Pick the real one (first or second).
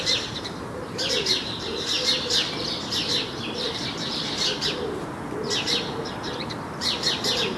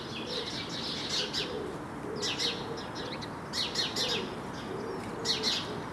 second